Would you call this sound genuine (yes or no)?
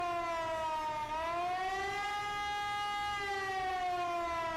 yes